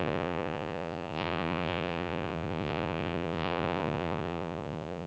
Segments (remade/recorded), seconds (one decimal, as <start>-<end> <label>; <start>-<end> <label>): 0.0-5.1 remade